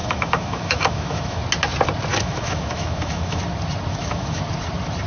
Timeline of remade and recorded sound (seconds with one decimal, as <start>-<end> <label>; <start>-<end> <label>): 0.0-1.4 remade; 1.4-2.1 recorded; 2.1-3.4 remade; 3.4-3.9 recorded; 3.9-4.4 remade; 4.4-5.1 recorded